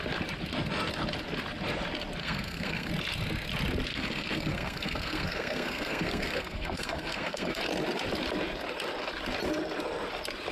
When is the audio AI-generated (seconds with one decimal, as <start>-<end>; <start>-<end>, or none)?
2.2-2.9; 3.9-7.6

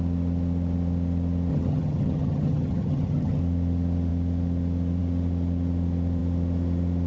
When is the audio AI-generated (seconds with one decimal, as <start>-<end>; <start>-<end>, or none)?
1.5-3.4

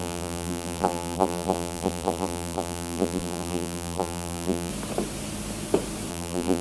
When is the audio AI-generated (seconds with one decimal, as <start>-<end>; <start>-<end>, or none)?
0.0-4.7; 6.1-6.6

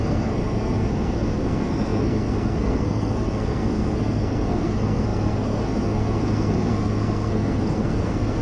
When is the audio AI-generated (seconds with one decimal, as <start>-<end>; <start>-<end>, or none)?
0.0-8.4

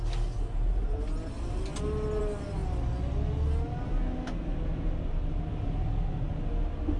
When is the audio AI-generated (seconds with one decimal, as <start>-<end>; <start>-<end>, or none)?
none

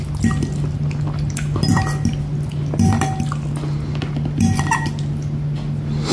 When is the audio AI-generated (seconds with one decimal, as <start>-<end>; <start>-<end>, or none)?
none

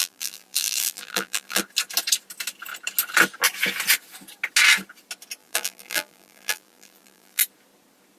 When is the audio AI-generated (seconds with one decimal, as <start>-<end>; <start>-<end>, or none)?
0.0-1.6; 5.4-7.4

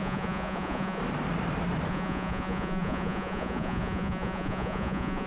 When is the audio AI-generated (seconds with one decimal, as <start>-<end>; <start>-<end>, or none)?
0.0-1.0; 1.9-5.3